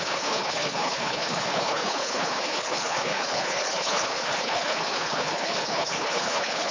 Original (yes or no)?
no